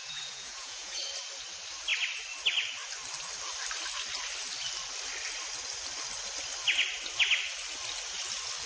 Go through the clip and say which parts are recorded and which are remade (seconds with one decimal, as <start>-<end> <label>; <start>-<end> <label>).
0.0-1.0 remade; 1.0-8.7 recorded